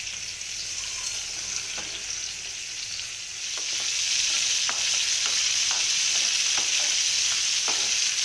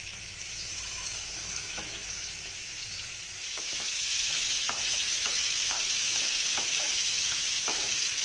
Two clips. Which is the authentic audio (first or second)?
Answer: first